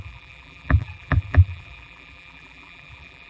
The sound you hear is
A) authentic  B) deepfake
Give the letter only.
B